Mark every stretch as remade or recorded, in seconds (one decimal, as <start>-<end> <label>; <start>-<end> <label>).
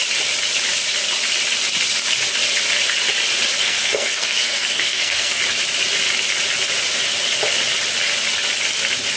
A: 0.0-3.6 recorded; 3.6-5.4 remade; 5.4-9.2 recorded